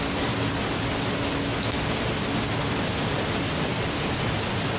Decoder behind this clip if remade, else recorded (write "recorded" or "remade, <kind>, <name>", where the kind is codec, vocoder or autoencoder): recorded